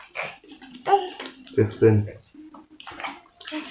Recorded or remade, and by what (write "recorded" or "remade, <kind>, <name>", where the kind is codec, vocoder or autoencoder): recorded